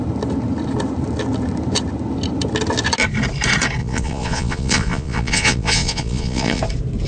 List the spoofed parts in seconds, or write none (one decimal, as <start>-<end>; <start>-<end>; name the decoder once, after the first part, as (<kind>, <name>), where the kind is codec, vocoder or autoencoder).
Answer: 3.8-6.6 (vocoder, Vocos)